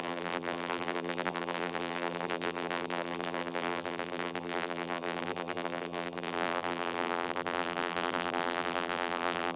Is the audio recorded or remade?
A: remade